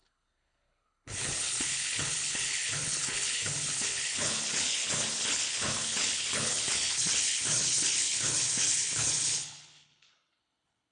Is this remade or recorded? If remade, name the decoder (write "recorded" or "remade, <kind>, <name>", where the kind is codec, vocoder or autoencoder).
remade, codec, HILCodec